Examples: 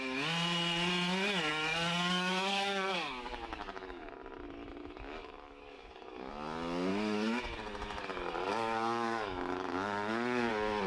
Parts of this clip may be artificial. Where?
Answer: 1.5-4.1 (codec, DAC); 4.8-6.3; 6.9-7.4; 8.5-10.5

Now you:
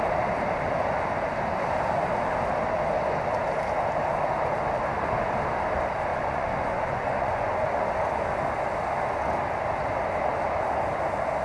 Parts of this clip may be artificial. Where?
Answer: 6.1-7.8 (vocoder, Vocos)

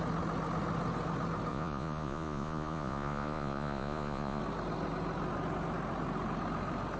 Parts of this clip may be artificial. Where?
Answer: 1.5-4.4 (vocoder, Vocos)

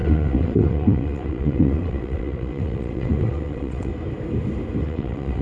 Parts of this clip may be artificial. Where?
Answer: 0.0-3.9 (vocoder, WaveNeXt); 4.8-5.4